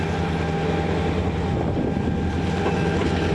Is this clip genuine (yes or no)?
yes